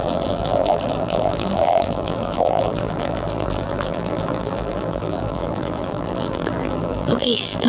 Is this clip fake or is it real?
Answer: fake